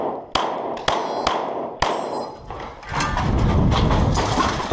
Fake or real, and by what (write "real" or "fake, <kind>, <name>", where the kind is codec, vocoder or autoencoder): real